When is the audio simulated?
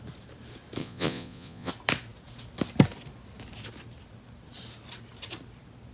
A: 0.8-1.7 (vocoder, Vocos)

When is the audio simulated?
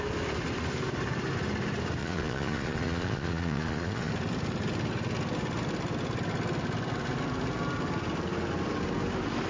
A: 2.0-4.1 (vocoder, Vocos)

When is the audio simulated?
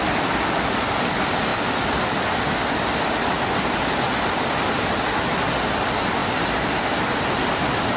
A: none